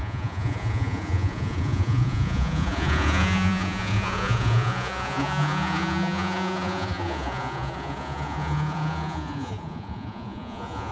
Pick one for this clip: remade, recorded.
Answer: remade